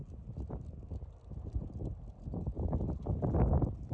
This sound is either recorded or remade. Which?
recorded